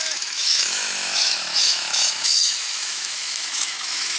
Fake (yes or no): yes